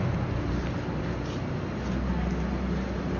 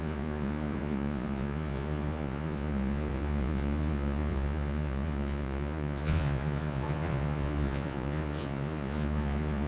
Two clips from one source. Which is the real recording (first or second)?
first